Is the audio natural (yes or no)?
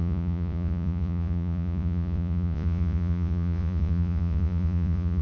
no